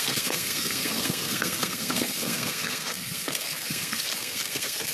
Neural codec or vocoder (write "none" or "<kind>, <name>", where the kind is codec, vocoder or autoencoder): codec, SNAC